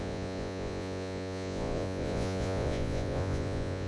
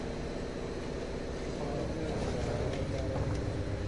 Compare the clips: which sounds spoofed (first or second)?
first